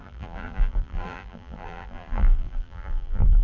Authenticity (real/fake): fake